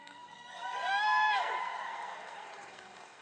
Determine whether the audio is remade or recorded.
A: remade